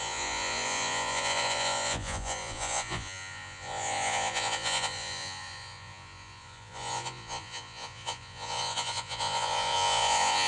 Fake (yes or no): yes